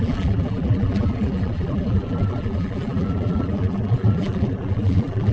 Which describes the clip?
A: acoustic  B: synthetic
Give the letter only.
B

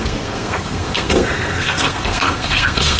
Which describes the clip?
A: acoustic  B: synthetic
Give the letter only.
B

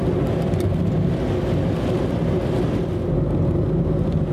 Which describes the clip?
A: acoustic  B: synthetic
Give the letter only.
A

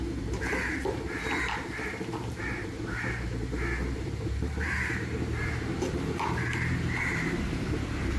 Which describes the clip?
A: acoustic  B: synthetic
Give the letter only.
B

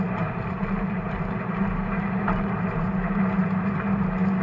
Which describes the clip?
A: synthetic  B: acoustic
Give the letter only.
A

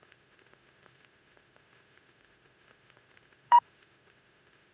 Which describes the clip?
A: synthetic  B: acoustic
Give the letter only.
A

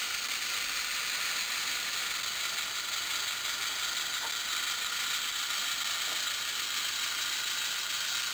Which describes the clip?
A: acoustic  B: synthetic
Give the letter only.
A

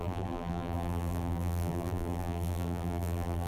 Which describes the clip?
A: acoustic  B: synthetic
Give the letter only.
B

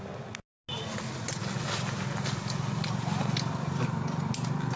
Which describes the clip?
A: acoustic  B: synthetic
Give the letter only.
A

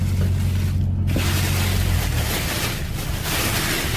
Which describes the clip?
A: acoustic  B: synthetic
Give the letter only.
A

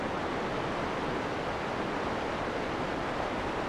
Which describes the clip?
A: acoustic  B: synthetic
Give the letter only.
A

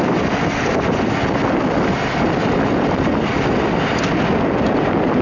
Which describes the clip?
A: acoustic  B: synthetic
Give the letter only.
A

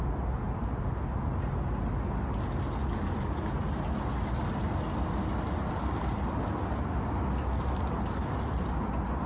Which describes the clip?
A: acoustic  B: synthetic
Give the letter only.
A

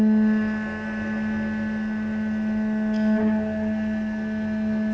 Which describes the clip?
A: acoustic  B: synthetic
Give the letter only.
A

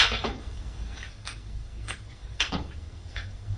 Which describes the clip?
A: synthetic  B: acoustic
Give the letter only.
A